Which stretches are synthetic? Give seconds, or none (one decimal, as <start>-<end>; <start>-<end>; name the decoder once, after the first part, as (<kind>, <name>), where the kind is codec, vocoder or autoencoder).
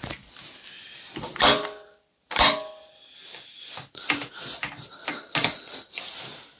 none